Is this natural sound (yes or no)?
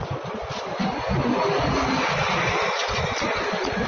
yes